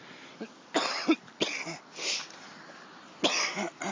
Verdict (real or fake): real